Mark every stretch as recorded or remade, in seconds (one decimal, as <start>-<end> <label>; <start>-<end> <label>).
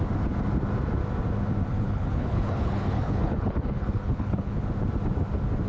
0.0-1.7 recorded; 1.7-4.6 remade; 4.6-5.7 recorded